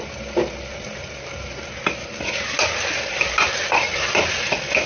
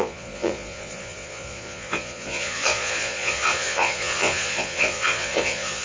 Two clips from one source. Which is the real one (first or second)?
first